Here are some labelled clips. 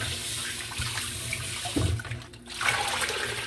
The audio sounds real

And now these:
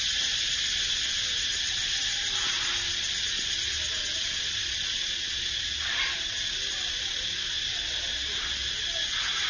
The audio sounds real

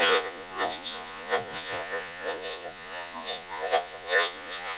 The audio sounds fake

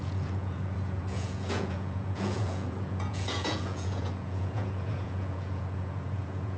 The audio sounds fake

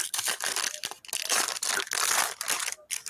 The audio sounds real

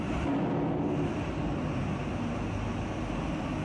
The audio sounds real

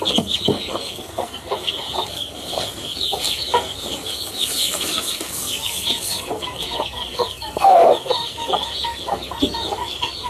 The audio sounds fake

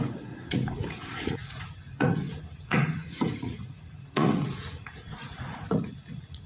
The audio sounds fake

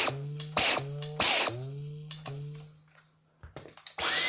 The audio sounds real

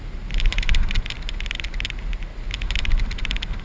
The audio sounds real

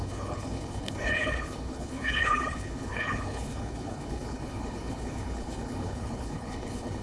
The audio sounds fake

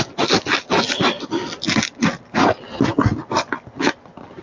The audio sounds real